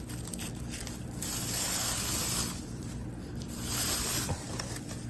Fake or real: real